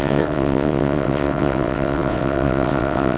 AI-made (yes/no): yes